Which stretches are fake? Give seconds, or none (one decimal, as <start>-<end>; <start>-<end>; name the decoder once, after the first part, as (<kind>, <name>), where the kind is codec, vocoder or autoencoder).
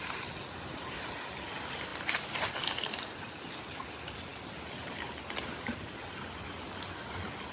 none